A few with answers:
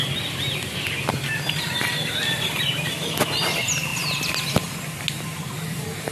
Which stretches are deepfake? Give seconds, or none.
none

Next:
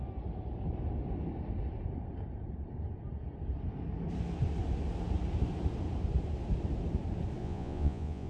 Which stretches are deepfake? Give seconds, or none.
7.4-8.3 (vocoder, Vocos)

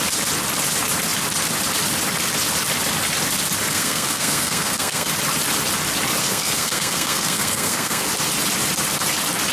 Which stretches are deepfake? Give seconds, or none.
3.7-5.1 (codec, SNAC); 6.2-8.1

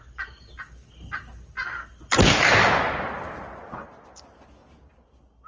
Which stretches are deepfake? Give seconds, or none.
none